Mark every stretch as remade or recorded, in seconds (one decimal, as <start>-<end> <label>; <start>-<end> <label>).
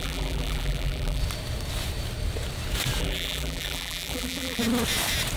0.0-1.2 remade; 1.2-3.0 recorded; 3.0-4.6 remade; 4.6-5.4 recorded